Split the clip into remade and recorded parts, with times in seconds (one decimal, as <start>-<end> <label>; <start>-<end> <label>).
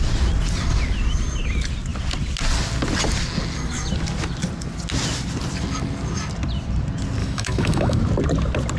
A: 0.0-7.2 recorded; 7.2-8.0 remade; 8.0-8.8 recorded